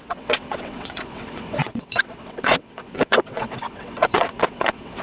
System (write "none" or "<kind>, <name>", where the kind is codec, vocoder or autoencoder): vocoder, WaveNeXt